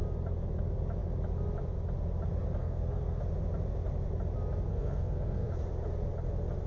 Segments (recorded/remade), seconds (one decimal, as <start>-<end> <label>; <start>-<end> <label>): 0.0-2.6 recorded; 2.6-3.2 remade; 3.2-4.7 recorded; 4.7-5.5 remade; 5.5-6.7 recorded